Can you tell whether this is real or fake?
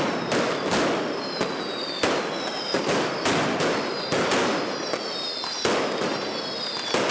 real